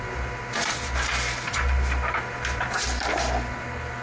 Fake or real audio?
real